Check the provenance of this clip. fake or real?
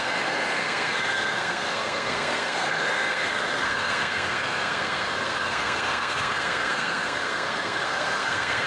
fake